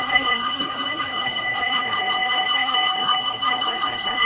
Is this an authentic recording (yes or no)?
no